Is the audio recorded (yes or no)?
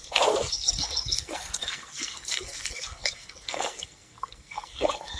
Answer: no